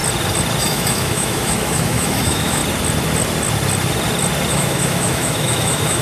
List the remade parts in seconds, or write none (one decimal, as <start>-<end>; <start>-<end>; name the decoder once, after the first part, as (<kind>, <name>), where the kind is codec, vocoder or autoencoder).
0.6-2.6 (autoencoder, DAC-VAE); 4.5-6.0